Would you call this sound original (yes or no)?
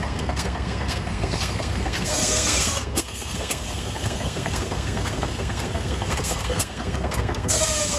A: no